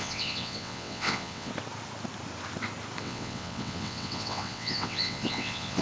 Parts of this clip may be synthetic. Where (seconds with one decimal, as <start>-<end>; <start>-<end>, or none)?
0.0-1.5; 3.0-5.8